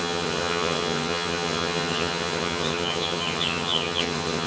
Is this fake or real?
fake